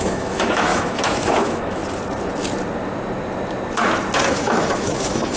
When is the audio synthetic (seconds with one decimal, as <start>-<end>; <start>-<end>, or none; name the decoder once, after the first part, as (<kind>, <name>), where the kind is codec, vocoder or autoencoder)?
0.0-1.8 (autoencoder, DAC-VAE); 4.2-5.4